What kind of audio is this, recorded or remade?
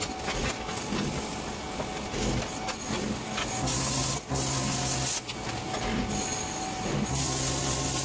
recorded